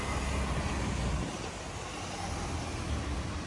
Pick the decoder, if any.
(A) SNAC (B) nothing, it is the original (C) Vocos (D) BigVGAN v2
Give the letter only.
B